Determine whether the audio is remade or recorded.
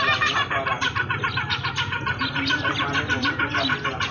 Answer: recorded